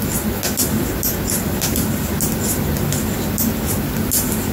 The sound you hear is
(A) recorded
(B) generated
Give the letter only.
A